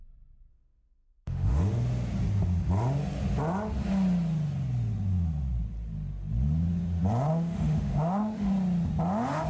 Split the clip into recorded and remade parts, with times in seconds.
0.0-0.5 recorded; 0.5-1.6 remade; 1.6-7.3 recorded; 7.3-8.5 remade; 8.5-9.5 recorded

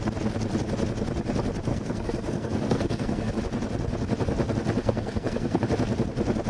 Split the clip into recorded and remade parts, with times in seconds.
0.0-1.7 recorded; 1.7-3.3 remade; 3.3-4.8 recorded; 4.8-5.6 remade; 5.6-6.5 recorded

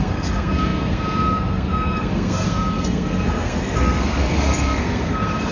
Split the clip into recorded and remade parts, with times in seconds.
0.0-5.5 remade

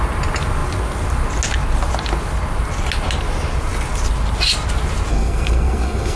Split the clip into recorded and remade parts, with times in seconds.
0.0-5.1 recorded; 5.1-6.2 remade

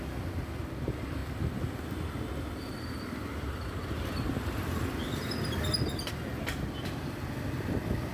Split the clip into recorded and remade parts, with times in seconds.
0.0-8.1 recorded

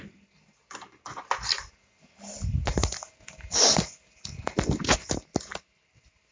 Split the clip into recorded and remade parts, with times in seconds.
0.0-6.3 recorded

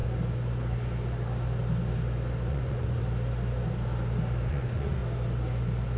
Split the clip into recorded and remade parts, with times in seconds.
0.0-2.5 recorded; 2.5-3.0 remade; 3.0-4.5 recorded; 4.5-5.0 remade; 5.0-6.0 recorded

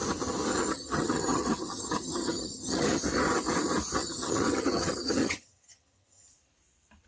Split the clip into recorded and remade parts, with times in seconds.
0.0-0.5 recorded; 0.5-3.0 remade; 3.0-4.0 recorded; 4.0-6.3 remade; 6.3-7.1 recorded